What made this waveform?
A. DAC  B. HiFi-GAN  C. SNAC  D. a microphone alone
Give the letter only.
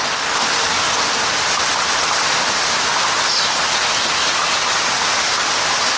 D